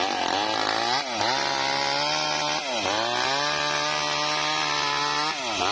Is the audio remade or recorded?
recorded